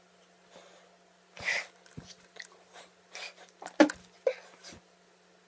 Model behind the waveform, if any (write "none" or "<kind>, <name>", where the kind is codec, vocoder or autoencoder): none